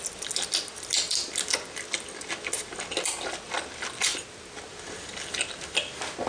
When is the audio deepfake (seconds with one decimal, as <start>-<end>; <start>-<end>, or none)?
none